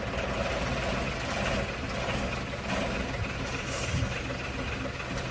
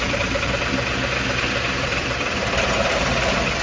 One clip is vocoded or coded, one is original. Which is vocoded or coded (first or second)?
second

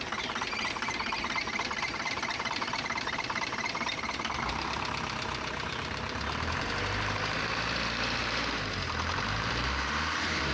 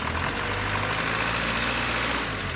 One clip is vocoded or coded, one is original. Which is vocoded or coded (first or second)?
first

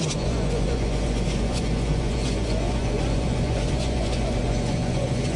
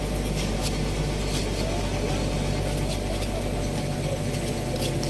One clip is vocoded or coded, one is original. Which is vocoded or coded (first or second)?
first